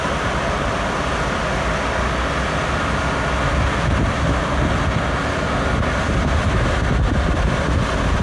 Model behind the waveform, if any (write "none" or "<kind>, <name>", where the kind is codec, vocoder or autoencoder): none